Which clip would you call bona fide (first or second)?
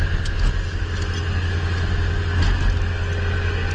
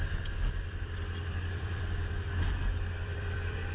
first